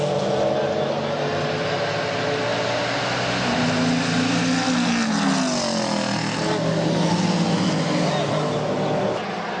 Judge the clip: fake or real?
real